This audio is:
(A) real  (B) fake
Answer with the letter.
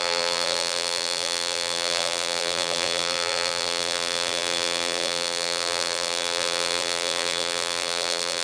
B